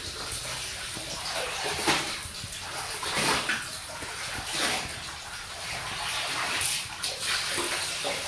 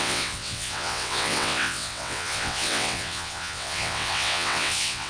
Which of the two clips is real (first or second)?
first